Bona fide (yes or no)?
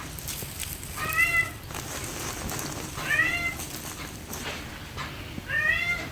yes